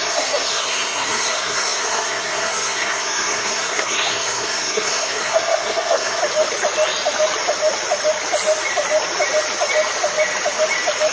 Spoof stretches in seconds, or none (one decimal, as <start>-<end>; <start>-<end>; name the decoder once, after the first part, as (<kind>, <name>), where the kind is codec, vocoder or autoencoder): 0.0-6.2 (codec, SNAC)

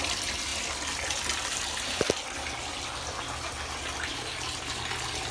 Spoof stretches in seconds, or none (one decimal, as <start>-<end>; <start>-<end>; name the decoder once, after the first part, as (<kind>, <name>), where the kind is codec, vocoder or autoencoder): none